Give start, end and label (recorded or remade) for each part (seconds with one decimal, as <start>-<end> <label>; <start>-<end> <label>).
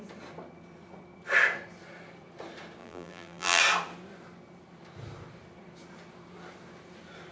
0.0-2.8 recorded; 2.8-3.6 remade; 3.6-7.3 recorded